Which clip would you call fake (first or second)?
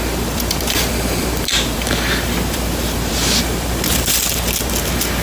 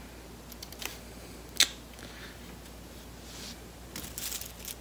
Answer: first